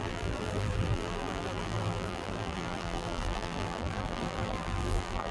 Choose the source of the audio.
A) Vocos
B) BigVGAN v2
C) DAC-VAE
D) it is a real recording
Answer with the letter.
B